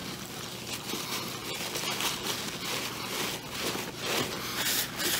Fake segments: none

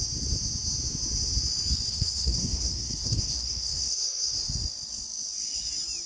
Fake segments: 1.9-4.3 (codec, SNAC)

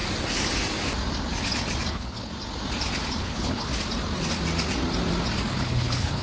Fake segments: 1.9-2.3 (codec, HILCodec); 3.2-3.7; 5.6-6.2

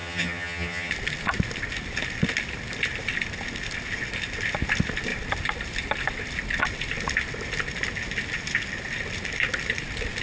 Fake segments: 0.0-0.9 (vocoder, HiFi-GAN)

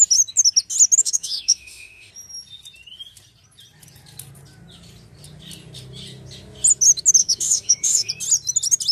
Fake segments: 1.0-2.1 (autoencoder, DAC-VAE); 7.2-8.1